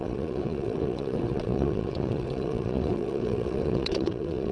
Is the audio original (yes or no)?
no